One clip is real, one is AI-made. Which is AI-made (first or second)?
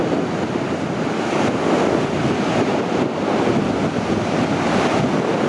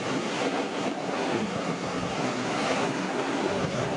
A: second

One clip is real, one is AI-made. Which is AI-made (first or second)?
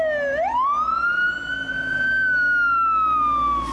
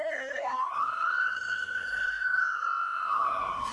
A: second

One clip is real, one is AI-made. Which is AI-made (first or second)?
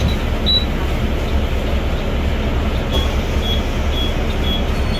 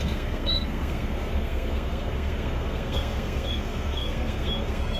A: second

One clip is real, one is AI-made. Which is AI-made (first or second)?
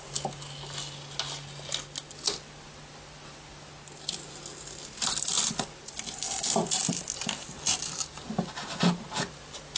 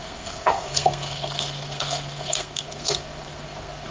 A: second